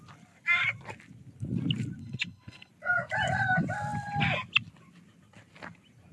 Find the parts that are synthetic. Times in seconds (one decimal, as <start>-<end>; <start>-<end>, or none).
2.0-2.7